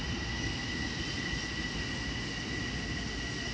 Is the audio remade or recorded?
recorded